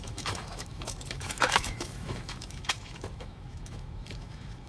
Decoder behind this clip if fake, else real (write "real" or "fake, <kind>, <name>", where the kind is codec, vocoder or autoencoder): fake, autoencoder, DAC-VAE